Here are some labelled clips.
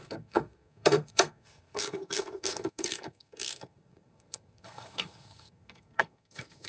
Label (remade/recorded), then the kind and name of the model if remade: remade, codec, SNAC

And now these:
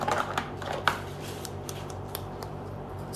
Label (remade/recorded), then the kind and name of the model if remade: remade, vocoder, BigVGAN v2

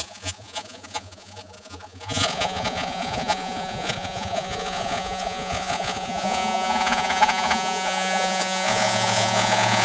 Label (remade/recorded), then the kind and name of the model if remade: remade, vocoder, Vocos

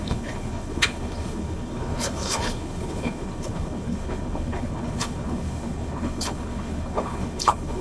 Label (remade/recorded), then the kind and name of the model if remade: remade, codec, HILCodec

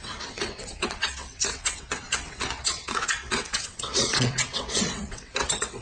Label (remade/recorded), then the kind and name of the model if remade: remade, vocoder, WaveNeXt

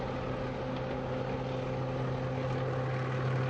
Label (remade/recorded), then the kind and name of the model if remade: recorded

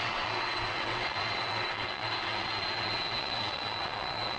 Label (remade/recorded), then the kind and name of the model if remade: remade, vocoder, WaveNeXt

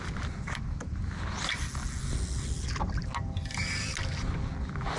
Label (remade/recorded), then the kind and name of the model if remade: recorded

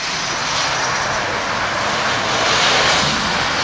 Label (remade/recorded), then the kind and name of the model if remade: recorded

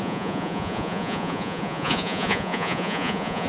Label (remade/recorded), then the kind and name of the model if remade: remade, vocoder, Vocos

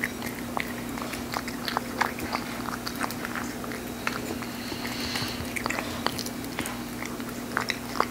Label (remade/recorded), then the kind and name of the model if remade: recorded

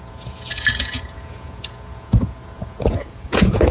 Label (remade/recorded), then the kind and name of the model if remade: remade, vocoder, Vocos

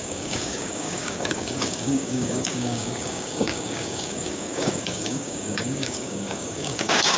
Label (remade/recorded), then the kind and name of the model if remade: remade, codec, DAC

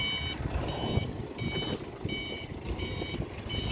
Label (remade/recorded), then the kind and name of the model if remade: recorded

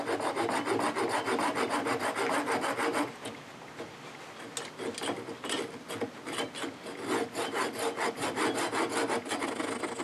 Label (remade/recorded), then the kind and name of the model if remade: recorded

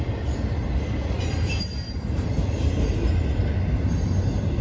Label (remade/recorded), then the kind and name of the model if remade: recorded